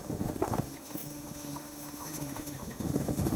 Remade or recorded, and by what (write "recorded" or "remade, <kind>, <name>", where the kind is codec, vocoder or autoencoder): remade, autoencoder, DAC-VAE